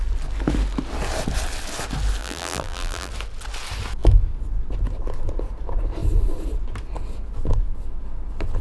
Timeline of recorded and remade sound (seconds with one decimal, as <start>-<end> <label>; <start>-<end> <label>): 0.0-2.2 recorded; 2.2-3.1 remade; 3.1-8.6 recorded